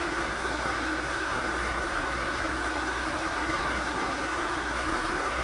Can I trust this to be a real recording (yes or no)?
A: no